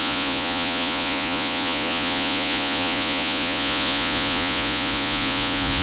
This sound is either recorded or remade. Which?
remade